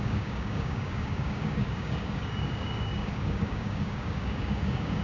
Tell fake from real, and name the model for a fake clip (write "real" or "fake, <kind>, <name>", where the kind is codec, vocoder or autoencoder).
fake, codec, DAC